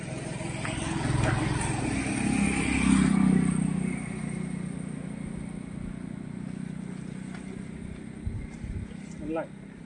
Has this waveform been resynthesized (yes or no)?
no